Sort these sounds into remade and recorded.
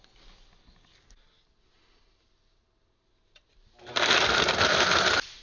recorded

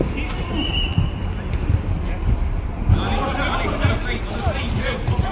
recorded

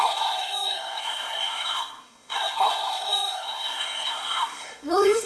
remade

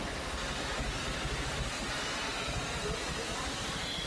recorded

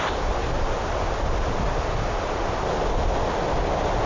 recorded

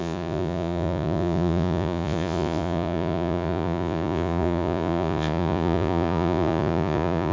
remade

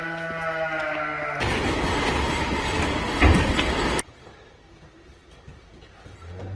recorded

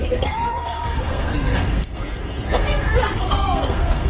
remade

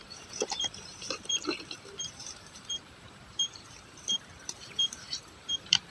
remade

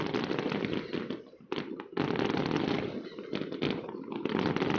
recorded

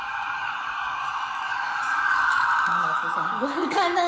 remade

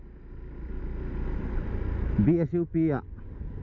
recorded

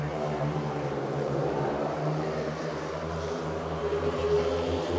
remade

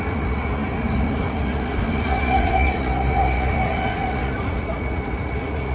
remade